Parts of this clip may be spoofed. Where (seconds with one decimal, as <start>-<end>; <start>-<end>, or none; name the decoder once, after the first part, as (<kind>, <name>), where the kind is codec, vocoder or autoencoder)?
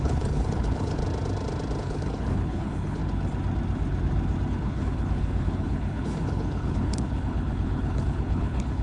0.0-1.0 (codec, HILCodec); 1.8-3.0; 4.5-8.8